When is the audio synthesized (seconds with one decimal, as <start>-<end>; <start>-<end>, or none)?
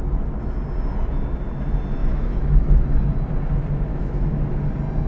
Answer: 2.0-2.6; 3.9-4.5